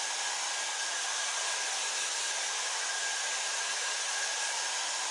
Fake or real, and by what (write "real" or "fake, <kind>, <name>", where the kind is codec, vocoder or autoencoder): real